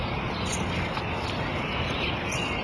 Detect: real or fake real